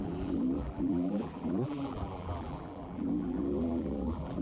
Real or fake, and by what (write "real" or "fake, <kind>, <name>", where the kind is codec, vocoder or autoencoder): fake, vocoder, BigVGAN v2